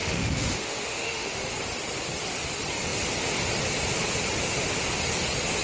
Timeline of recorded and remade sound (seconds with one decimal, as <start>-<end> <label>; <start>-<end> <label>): 0.0-1.5 remade; 1.5-5.6 recorded